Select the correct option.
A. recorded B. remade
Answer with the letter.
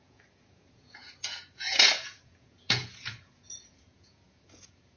B